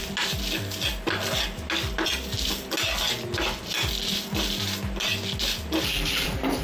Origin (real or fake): real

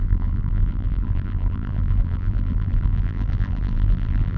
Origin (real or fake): fake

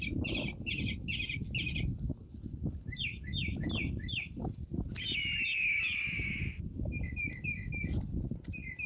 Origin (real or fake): real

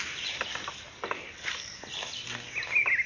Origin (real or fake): real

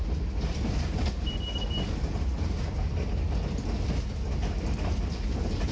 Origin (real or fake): real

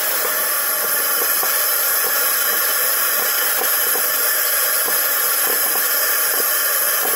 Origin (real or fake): fake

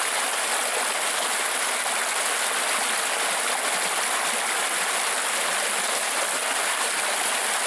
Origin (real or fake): real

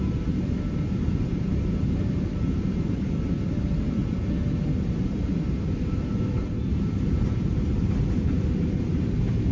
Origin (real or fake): fake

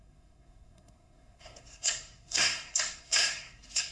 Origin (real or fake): fake